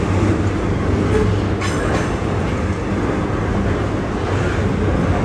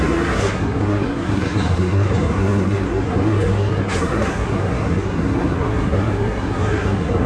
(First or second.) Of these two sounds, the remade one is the second